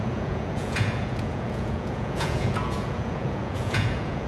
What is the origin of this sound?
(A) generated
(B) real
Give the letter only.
A